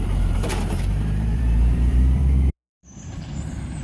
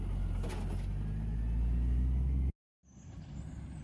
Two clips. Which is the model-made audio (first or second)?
first